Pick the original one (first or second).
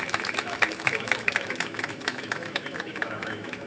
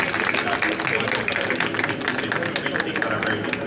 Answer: second